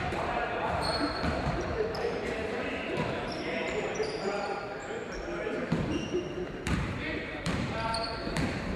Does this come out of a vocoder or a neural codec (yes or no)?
yes